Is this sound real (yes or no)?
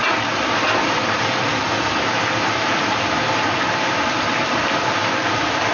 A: no